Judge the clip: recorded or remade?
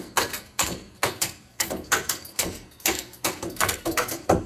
remade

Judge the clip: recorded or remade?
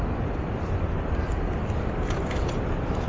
recorded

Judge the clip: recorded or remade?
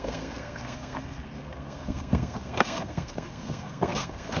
remade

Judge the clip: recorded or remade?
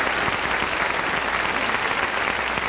recorded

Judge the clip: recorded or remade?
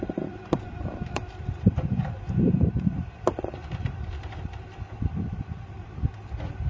remade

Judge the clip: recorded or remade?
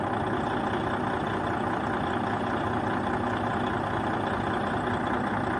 recorded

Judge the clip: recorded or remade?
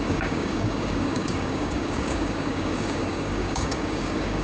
remade